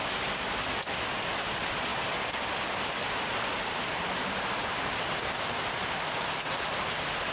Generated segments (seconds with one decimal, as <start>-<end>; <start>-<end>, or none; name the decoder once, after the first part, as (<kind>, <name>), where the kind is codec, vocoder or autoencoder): none